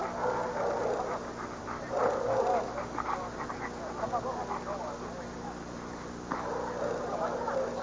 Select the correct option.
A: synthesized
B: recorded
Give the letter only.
B